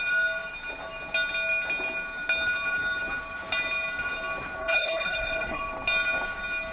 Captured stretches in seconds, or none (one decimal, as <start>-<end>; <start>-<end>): 0.0-4.6; 5.6-6.7